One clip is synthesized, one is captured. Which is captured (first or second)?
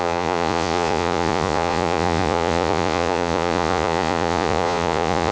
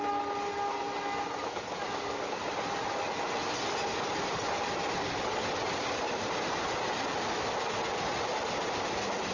second